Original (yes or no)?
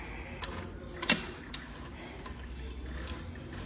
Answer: yes